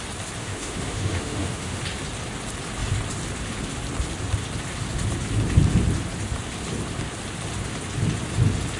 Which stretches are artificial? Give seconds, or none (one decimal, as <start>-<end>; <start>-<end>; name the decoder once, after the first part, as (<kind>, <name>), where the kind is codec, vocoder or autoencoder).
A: 0.4-1.8 (autoencoder, DAC-VAE)